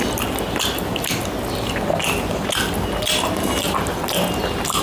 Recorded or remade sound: recorded